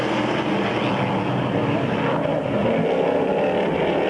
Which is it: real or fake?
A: real